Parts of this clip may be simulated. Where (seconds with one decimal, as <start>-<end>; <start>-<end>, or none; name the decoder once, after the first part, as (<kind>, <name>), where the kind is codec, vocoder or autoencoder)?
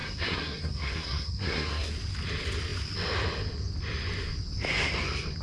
0.0-1.9 (codec, SNAC)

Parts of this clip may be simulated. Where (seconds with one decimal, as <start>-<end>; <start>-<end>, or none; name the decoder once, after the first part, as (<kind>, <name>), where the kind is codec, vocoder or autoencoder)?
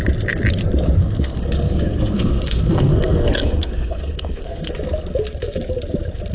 1.0-4.7 (codec, SNAC)